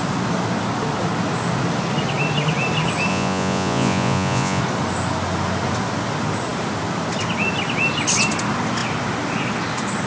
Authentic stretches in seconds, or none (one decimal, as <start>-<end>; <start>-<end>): 0.0-3.1; 4.6-10.1